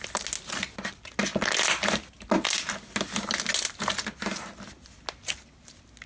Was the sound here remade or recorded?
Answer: recorded